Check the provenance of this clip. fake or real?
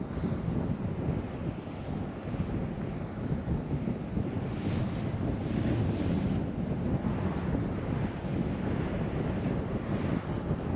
real